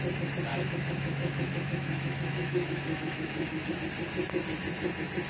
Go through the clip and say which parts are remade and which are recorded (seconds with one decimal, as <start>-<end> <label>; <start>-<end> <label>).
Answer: 0.0-0.5 recorded; 0.5-3.7 remade; 3.7-5.3 recorded